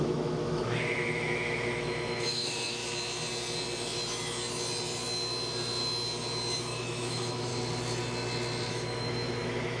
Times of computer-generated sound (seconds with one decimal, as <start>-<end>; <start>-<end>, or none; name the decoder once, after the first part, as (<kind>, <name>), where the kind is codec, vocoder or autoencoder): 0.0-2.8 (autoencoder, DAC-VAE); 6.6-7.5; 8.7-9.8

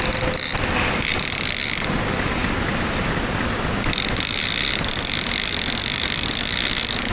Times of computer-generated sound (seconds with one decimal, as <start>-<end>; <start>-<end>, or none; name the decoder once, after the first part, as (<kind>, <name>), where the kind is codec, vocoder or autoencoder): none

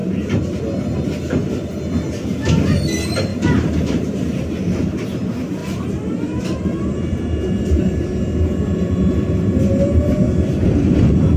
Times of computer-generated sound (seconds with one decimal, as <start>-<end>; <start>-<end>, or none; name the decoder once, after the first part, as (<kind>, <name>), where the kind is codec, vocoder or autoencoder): 0.0-0.6 (vocoder, BigVGAN v2); 3.3-4.7; 5.6-8.1

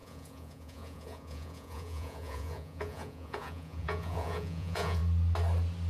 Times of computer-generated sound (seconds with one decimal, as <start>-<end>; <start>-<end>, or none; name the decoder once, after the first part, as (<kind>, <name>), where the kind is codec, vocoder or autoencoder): 0.0-5.0 (vocoder, Vocos)